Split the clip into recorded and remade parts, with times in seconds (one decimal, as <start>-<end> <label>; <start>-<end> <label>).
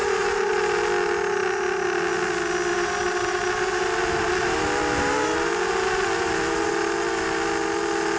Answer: 0.0-0.5 remade; 0.5-2.7 recorded; 2.7-6.7 remade; 6.7-8.2 recorded